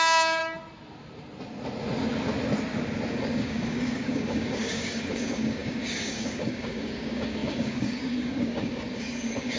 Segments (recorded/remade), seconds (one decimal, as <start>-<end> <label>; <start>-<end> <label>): 0.0-0.4 remade; 0.4-3.1 recorded; 3.1-9.6 remade